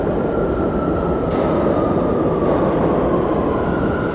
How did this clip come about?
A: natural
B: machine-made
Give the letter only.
A